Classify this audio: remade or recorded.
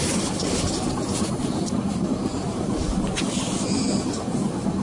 recorded